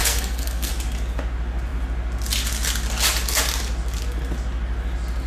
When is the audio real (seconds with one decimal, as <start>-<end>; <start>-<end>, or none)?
0.7-5.3